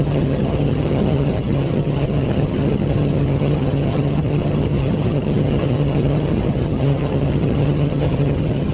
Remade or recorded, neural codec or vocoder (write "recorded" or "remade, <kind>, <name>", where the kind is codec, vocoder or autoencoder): remade, vocoder, HiFi-GAN